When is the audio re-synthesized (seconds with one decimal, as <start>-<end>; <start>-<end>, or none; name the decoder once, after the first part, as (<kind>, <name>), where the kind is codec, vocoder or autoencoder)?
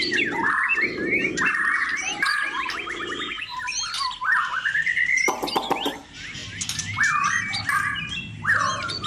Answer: none